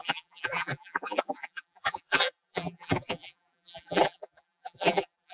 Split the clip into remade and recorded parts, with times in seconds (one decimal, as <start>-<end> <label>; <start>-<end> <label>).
0.0-5.3 remade